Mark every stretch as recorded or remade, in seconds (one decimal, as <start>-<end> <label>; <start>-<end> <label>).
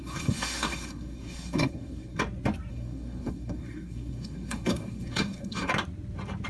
0.0-2.2 remade; 2.2-2.7 recorded; 2.7-5.7 remade; 5.7-6.5 recorded